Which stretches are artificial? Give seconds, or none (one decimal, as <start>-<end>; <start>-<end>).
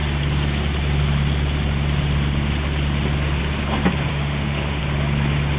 4.1-4.8